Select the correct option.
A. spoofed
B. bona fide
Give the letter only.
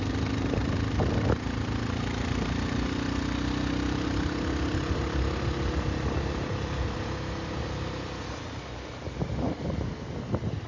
B